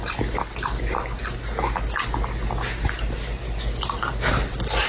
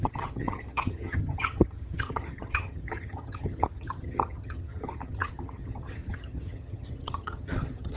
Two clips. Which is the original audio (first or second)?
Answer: first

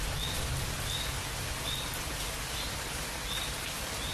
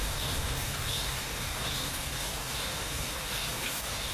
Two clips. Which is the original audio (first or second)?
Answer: first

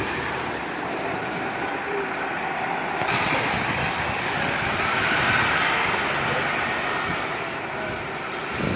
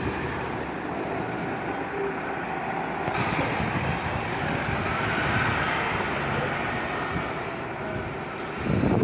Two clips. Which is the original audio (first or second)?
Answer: second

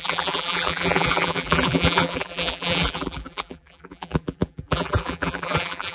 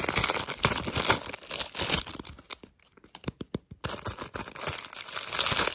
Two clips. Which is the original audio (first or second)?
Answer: second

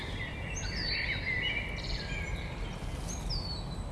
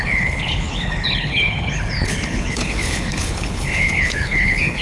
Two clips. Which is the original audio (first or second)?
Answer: first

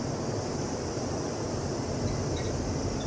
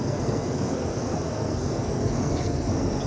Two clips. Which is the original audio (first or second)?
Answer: first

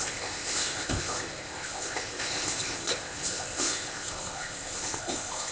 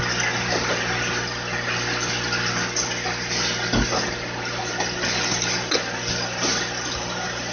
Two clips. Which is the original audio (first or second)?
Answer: second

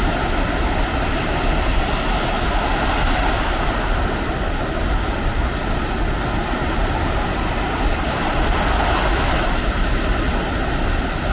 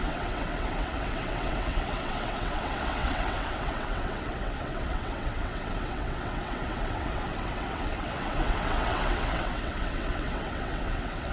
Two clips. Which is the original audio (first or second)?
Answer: first